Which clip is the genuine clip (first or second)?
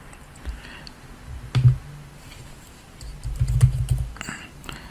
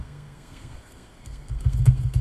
first